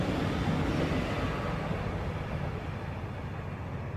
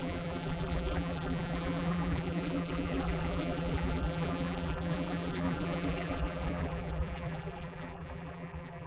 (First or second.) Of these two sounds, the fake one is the second